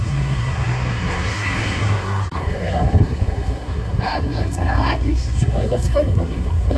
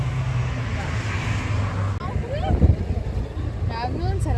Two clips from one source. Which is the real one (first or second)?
second